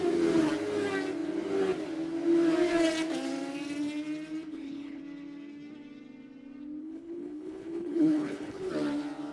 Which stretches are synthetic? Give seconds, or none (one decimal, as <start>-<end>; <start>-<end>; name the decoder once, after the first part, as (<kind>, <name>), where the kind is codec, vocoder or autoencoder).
4.5-5.0 (codec, HILCodec); 6.8-8.7